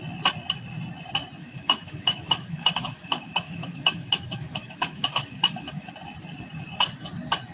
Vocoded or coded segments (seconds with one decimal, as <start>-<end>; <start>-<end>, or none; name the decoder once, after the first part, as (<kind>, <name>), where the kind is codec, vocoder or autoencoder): 1.4-5.9 (autoencoder, DAC-VAE)